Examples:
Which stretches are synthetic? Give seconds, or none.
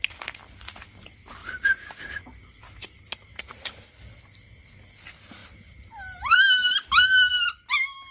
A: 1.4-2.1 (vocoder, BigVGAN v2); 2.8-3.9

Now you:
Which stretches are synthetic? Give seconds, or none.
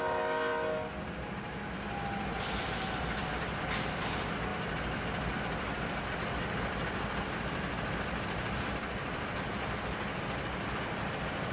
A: none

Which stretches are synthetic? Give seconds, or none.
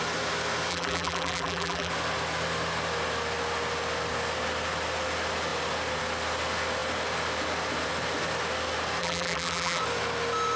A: 0.7-1.9 (vocoder, BigVGAN v2); 9.0-9.8